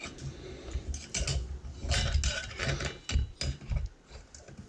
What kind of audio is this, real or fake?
real